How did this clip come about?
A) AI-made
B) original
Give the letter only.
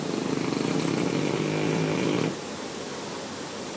B